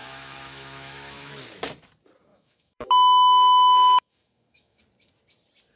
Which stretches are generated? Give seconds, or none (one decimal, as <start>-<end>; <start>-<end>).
0.0-1.3; 2.3-4.8